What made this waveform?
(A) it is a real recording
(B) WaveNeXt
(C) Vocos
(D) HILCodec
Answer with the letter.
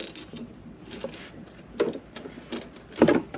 A